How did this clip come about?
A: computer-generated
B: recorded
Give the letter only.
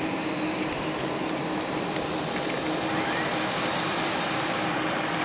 B